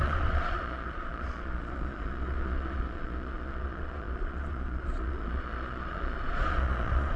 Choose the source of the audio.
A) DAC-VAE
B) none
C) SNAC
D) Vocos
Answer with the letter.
D